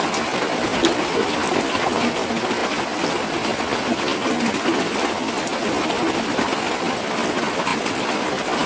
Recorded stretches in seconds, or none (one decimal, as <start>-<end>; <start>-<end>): 0.0-7.7